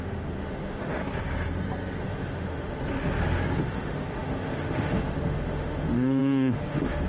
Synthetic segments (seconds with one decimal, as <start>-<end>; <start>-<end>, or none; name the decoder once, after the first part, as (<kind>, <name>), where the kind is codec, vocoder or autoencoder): 0.0-1.0 (autoencoder, DAC-VAE); 2.0-2.8; 3.6-7.1